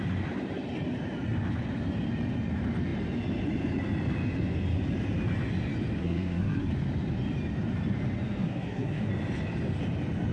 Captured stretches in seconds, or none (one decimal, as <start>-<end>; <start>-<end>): 0.0-6.0; 6.7-8.4; 9.1-10.3